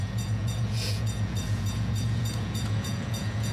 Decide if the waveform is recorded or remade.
remade